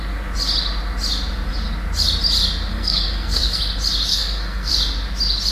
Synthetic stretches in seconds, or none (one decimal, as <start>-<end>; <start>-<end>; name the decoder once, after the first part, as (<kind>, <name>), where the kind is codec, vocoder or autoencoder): 2.7-3.6 (codec, SNAC); 4.1-4.7